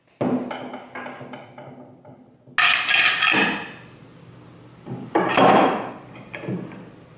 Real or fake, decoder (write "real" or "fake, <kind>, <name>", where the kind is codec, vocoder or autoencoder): real